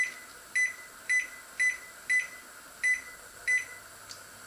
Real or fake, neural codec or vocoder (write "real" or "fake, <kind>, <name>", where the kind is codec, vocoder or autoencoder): real